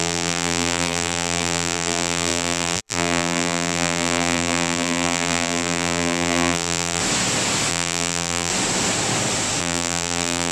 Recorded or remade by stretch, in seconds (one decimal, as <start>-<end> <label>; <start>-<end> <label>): 0.0-7.0 remade; 7.0-7.7 recorded; 7.7-8.5 remade; 8.5-9.6 recorded; 9.6-10.5 remade